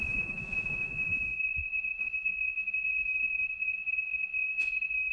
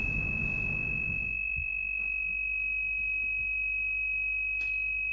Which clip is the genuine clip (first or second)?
second